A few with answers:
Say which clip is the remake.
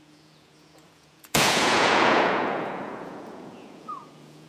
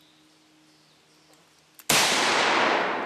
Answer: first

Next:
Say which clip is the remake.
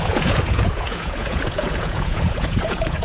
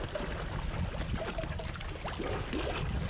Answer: first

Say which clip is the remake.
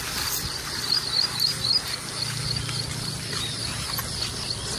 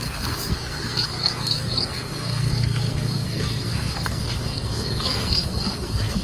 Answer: second